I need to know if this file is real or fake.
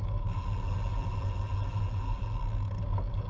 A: real